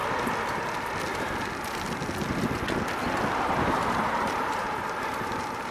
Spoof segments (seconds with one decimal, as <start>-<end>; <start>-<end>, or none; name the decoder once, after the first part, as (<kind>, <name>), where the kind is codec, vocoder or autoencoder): 3.4-5.7 (vocoder, BigVGAN v2)